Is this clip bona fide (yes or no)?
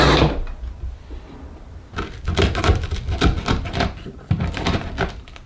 yes